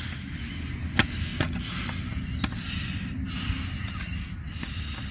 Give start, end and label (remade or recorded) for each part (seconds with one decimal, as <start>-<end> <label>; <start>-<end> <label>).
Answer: 0.0-5.1 recorded